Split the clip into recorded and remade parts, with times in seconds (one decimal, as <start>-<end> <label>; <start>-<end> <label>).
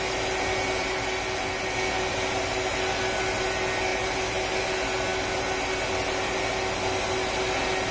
0.0-7.9 recorded